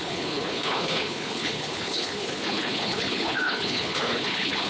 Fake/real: fake